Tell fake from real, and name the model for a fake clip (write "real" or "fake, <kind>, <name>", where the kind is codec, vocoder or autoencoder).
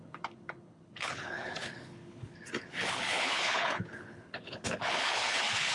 fake, codec, HILCodec